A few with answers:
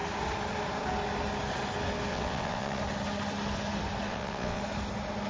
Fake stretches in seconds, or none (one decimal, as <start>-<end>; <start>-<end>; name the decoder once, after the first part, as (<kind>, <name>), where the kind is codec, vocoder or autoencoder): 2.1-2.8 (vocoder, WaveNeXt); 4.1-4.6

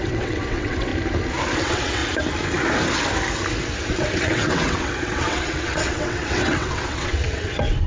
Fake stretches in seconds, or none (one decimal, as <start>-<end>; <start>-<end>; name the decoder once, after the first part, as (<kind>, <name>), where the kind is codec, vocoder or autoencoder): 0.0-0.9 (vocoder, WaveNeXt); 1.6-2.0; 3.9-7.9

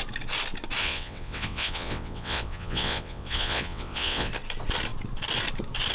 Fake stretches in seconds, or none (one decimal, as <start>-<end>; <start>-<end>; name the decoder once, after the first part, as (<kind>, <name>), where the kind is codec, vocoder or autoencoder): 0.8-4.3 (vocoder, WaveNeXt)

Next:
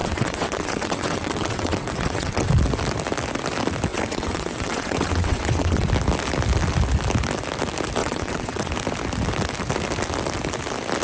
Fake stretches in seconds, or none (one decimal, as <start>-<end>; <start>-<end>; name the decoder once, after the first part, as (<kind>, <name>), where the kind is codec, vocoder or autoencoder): 0.0-2.5 (vocoder, WaveNeXt); 3.9-5.9; 8.0-8.7

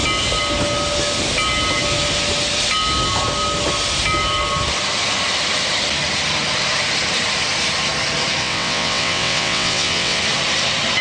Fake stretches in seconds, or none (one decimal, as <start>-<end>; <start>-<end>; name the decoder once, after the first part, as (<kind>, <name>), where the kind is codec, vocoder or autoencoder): 8.4-10.2 (vocoder, WaveNeXt)

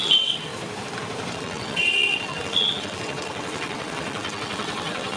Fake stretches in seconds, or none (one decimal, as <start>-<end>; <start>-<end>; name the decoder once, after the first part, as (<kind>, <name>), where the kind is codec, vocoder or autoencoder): 0.0-0.5 (vocoder, WaveNeXt); 1.3-5.2